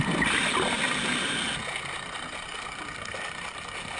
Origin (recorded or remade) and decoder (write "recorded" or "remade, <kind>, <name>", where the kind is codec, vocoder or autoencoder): recorded